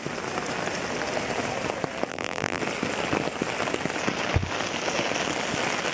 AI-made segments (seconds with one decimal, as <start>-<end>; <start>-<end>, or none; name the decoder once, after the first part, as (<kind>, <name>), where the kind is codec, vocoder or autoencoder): 2.1-2.6 (vocoder, BigVGAN v2)